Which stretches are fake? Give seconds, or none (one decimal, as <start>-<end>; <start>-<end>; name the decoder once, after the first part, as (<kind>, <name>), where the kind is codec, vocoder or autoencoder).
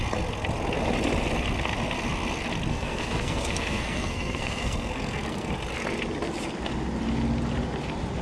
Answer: 2.7-5.5 (codec, SNAC)